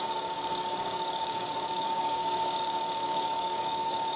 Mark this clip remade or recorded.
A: remade